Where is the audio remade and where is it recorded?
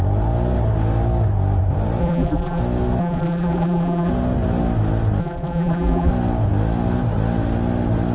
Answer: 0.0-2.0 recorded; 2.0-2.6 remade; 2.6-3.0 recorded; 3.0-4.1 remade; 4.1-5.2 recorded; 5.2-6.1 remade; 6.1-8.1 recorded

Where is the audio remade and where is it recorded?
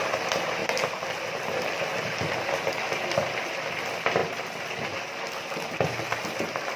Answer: 0.0-6.8 recorded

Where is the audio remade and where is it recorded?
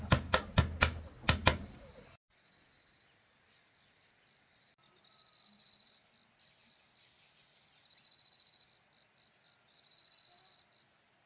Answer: 0.0-11.3 recorded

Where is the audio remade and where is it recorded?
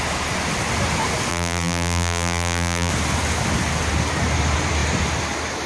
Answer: 0.0-1.3 recorded; 1.3-2.9 remade; 2.9-5.7 recorded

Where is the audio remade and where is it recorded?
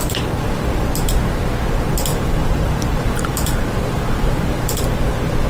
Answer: 0.0-0.8 remade; 0.8-2.1 recorded; 2.1-5.5 remade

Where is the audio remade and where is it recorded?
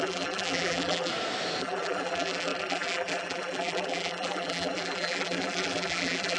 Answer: 0.0-1.1 remade; 1.1-1.6 recorded; 1.6-6.4 remade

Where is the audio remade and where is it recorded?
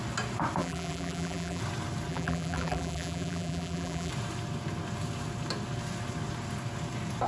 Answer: 0.0-0.6 recorded; 0.6-1.6 remade; 1.6-2.1 recorded; 2.1-4.1 remade; 4.1-7.3 recorded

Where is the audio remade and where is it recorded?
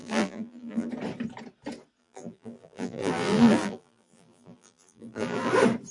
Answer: 0.0-0.9 remade; 0.9-2.0 recorded; 2.0-5.5 remade; 5.5-5.9 recorded